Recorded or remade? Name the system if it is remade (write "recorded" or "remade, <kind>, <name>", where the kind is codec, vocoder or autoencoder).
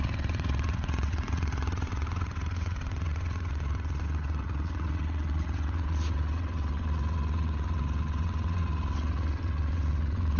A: remade, vocoder, WaveNeXt